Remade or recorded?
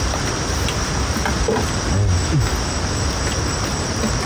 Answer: recorded